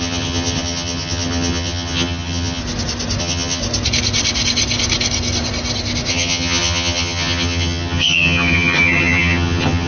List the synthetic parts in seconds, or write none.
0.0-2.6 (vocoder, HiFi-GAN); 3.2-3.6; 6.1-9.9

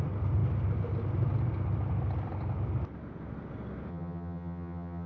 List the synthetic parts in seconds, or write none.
3.9-5.1 (vocoder, HiFi-GAN)

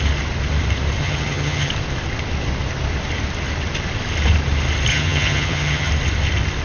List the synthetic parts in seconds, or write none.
1.0-1.7 (vocoder, HiFi-GAN); 4.9-5.9

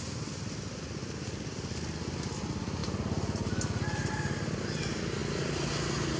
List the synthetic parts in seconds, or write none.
none

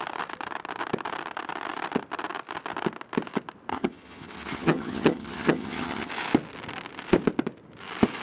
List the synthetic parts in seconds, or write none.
3.7-6.1 (vocoder, HiFi-GAN)

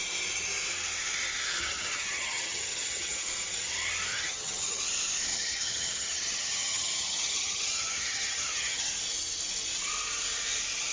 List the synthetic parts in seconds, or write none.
1.6-3.3 (vocoder, HiFi-GAN); 4.1-4.8; 5.3-8.9

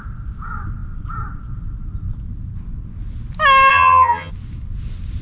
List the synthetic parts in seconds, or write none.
3.7-4.3 (vocoder, HiFi-GAN)